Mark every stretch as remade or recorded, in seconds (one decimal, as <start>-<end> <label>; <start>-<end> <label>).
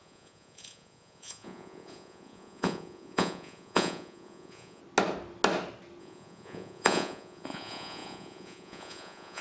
0.0-4.8 remade; 4.8-6.0 recorded; 6.0-9.4 remade